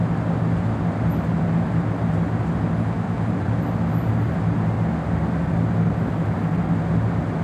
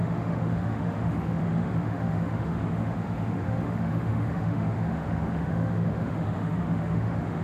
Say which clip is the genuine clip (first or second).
first